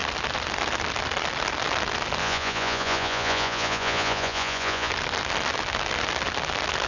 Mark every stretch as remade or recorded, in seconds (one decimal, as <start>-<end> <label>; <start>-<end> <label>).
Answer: 0.0-2.2 recorded; 2.2-4.9 remade; 4.9-6.9 recorded